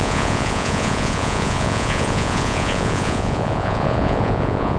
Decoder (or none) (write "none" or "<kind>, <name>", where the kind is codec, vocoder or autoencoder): vocoder, Vocos